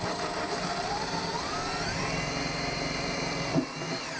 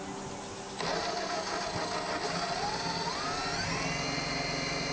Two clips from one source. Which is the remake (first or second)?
first